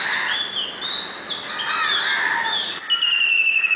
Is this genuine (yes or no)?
yes